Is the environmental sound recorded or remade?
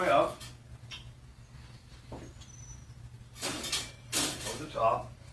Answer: recorded